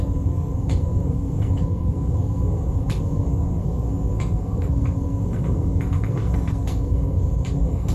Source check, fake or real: fake